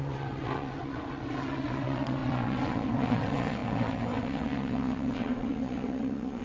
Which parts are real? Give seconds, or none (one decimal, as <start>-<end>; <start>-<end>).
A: none